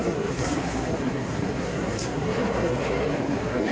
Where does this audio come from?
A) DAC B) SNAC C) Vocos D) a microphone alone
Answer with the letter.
B